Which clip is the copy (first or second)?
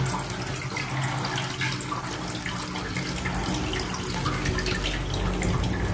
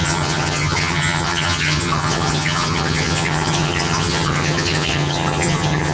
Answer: second